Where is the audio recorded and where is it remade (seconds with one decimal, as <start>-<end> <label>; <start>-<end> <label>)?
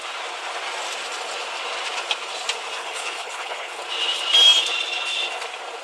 0.0-2.8 recorded; 2.8-3.8 remade; 3.8-5.8 recorded